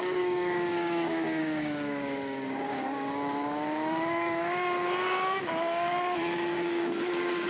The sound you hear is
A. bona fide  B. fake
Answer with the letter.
B